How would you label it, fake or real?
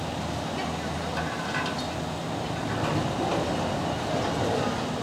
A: real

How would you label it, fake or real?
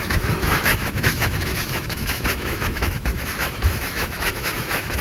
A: fake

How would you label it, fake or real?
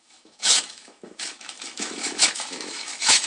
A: fake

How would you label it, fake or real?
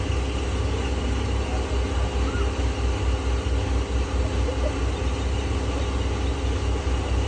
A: real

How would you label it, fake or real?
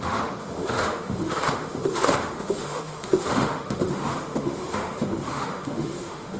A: fake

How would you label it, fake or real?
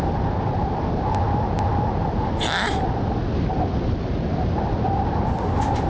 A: real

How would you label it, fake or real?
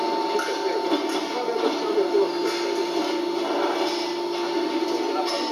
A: real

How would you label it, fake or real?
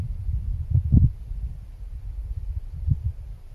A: real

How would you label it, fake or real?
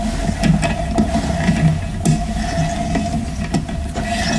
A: real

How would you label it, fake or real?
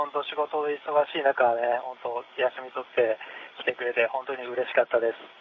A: real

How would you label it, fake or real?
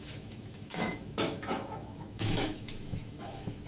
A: fake